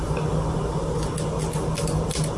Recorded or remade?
recorded